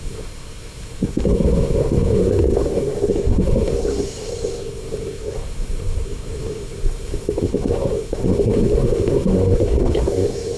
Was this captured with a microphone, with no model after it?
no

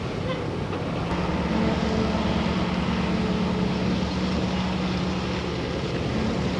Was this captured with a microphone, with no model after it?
yes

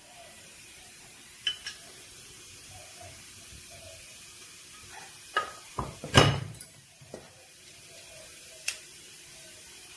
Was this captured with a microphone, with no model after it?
no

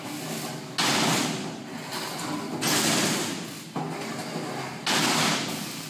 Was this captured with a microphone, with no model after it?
yes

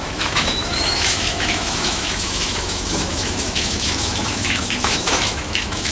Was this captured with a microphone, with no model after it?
no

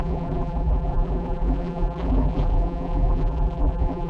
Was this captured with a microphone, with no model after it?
no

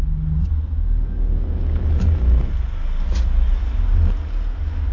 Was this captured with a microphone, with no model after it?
yes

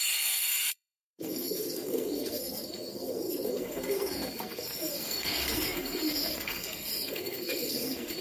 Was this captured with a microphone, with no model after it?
no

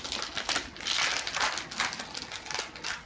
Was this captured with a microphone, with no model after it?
yes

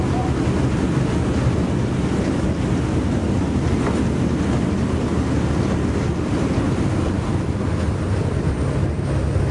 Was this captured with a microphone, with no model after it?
yes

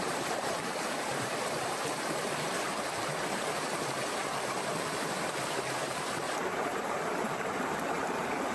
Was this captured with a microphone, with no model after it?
no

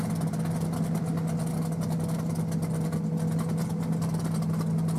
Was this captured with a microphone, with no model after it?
yes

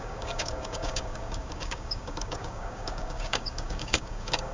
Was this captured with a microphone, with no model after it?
no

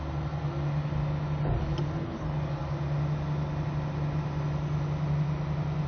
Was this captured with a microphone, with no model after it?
yes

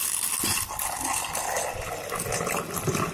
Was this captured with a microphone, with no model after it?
yes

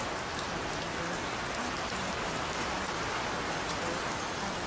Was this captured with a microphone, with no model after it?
yes